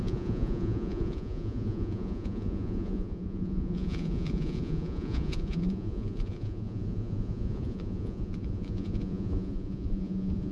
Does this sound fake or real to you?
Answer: fake